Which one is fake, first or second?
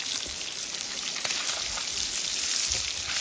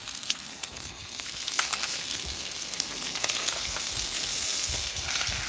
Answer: second